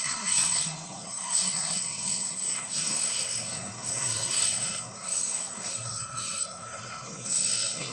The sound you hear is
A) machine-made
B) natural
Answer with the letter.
A